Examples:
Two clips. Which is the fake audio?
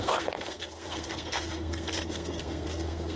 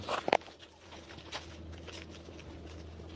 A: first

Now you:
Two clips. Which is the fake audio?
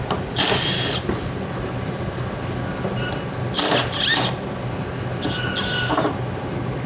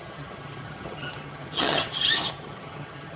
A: second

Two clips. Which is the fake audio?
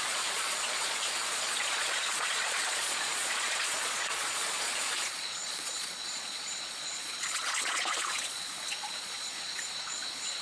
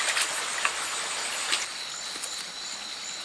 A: first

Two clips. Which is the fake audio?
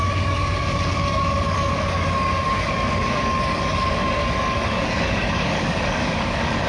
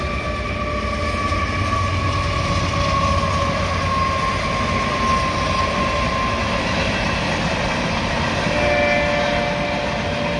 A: first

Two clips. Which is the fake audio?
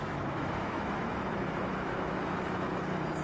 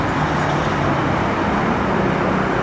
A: first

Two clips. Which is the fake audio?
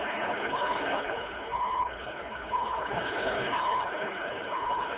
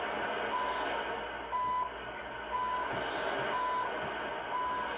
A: first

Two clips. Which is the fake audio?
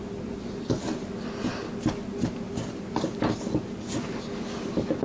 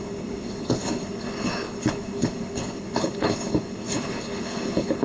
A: second